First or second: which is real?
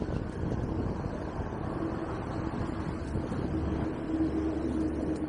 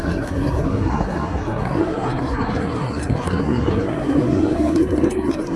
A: first